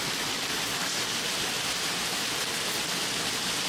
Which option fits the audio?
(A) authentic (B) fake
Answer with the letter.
A